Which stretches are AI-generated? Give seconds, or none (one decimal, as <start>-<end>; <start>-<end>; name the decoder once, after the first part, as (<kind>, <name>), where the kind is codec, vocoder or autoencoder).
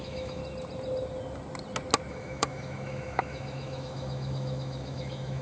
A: 0.0-0.4 (autoencoder, DAC-VAE); 2.1-5.4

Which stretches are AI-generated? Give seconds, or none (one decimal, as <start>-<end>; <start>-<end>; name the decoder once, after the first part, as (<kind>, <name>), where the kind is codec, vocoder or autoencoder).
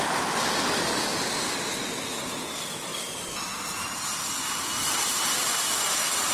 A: none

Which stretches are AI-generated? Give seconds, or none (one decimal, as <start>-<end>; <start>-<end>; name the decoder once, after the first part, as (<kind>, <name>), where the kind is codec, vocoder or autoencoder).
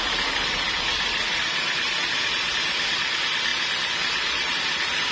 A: none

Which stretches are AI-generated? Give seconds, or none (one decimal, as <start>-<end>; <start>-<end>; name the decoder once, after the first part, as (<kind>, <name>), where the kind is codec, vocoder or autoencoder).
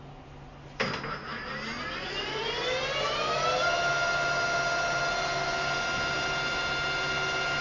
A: none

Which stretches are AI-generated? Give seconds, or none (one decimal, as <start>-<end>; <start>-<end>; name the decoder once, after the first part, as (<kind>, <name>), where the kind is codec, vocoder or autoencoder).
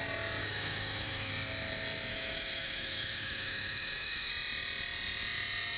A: 0.4-1.3 (autoencoder, DAC-VAE); 2.1-4.3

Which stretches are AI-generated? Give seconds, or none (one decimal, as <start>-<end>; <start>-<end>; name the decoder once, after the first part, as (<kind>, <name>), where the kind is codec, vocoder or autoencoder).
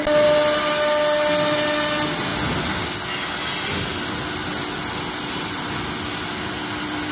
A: none